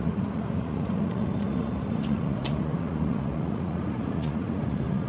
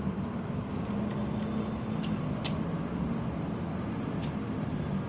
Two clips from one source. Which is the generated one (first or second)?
first